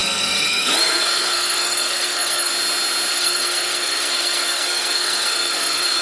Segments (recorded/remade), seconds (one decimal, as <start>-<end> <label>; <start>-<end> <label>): 0.0-2.5 remade; 2.5-3.1 recorded; 3.1-6.0 remade